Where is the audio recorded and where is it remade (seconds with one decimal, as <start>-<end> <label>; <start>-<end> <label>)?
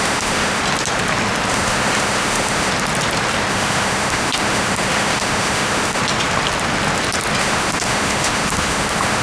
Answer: 0.0-0.6 remade; 0.6-1.5 recorded; 1.5-2.7 remade; 2.7-3.5 recorded; 3.5-6.0 remade; 6.0-7.4 recorded; 7.4-9.2 remade